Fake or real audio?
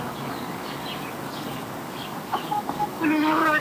fake